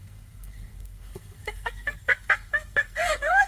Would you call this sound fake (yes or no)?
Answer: yes